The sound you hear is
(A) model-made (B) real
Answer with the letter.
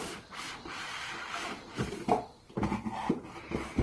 B